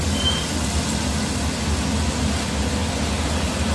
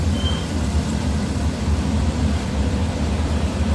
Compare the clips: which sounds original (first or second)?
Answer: first